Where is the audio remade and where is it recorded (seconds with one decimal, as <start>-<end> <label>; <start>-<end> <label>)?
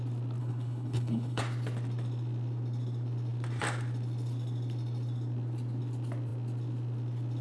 0.0-0.4 recorded; 0.4-1.4 remade; 1.4-7.4 recorded